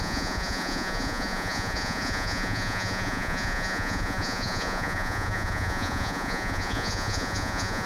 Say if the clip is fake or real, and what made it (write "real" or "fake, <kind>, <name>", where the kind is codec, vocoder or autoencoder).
fake, vocoder, Vocos